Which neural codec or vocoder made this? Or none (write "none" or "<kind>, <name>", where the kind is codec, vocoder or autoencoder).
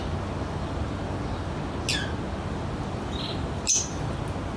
none